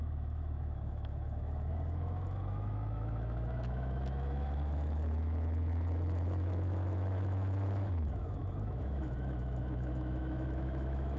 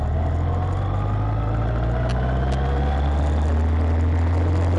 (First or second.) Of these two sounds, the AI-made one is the first